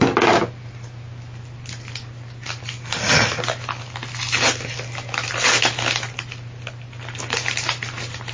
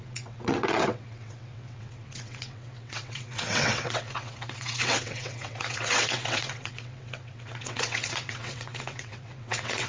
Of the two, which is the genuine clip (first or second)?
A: first